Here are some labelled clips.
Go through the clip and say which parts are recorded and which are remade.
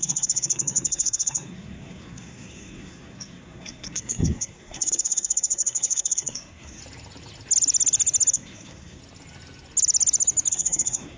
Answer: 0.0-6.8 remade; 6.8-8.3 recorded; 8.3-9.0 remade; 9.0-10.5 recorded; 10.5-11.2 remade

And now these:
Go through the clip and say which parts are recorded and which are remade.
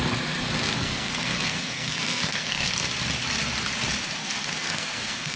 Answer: 0.0-0.7 recorded; 0.7-2.7 remade; 2.7-4.2 recorded; 4.2-5.4 remade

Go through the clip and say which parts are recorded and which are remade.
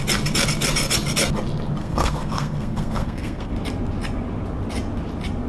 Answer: 0.0-1.8 recorded; 1.8-3.5 remade; 3.5-5.5 recorded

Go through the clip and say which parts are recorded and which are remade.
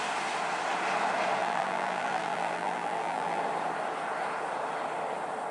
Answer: 0.0-1.4 recorded; 1.4-3.4 remade; 3.4-5.5 recorded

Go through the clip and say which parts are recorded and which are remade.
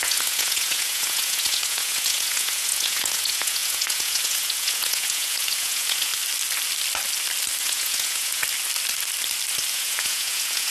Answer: 0.0-6.1 remade; 6.1-7.6 recorded; 7.6-8.4 remade; 8.4-9.7 recorded; 9.7-10.7 remade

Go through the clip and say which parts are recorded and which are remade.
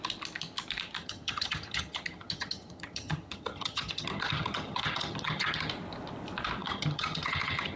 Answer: 0.0-1.0 recorded; 1.0-5.7 remade; 5.7-6.6 recorded; 6.6-7.8 remade